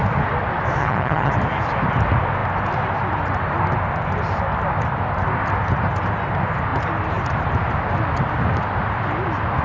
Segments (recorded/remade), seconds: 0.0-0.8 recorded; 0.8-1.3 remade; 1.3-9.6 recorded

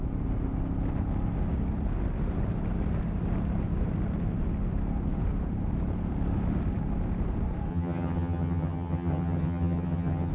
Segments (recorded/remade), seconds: 0.0-7.7 recorded; 7.7-10.3 remade